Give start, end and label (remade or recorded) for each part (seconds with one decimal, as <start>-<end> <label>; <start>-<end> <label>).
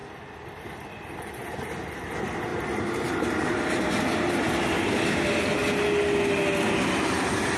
0.0-2.5 recorded; 2.5-4.7 remade; 4.7-7.6 recorded